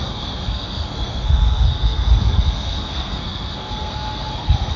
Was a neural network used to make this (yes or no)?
yes